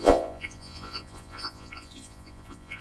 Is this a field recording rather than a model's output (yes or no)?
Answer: no